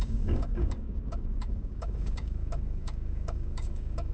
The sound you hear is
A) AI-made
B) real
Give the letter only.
A